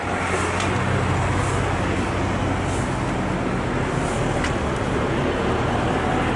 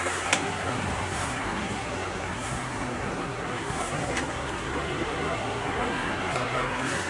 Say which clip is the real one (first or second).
first